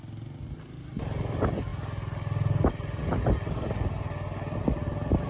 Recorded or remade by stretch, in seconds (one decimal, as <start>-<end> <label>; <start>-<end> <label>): 0.0-5.3 recorded